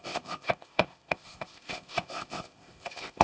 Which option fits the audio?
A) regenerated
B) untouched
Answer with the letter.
A